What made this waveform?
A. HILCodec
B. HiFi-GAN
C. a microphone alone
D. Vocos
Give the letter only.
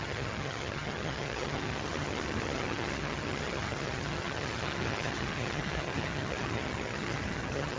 B